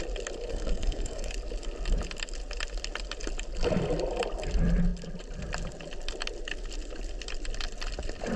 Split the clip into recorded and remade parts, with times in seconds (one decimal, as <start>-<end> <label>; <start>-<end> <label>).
0.0-0.5 recorded; 0.5-1.3 remade; 1.3-8.4 recorded